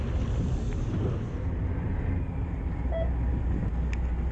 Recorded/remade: recorded